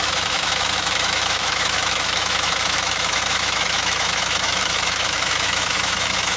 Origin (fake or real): fake